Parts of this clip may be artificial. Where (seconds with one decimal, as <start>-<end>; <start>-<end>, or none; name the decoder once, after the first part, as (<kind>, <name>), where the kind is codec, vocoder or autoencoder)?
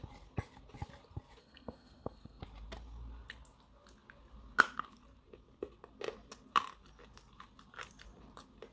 1.4-2.4 (codec, SNAC)